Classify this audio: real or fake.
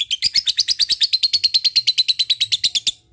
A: real